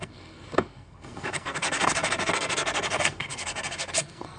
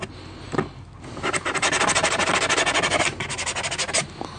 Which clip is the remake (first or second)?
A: first